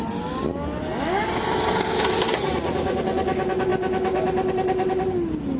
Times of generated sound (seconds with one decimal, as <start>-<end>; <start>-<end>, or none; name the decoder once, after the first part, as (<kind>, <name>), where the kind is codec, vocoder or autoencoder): none